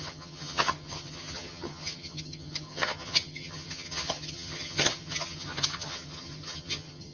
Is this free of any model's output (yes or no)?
no